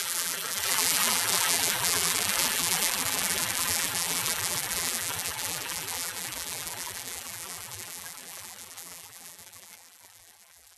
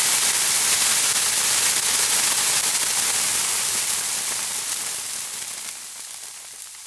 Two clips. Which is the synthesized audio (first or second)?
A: first